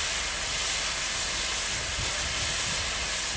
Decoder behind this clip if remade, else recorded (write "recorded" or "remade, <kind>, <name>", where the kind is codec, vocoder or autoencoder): recorded